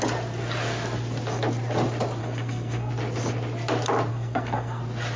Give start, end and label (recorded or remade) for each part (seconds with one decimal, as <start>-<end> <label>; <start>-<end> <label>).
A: 0.0-2.2 recorded; 2.2-2.9 remade; 2.9-4.1 recorded; 4.1-4.8 remade; 4.8-5.2 recorded